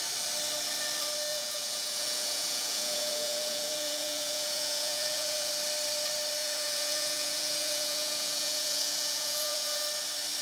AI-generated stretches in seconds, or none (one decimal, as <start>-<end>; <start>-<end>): 1.3-5.5; 6.4-9.8